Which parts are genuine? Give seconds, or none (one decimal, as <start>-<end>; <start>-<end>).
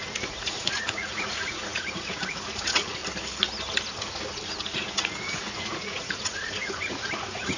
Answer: 3.0-4.6